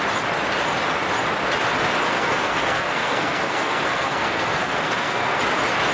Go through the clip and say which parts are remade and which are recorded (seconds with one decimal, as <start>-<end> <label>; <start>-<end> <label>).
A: 0.0-2.1 recorded; 2.1-5.4 remade; 5.4-5.9 recorded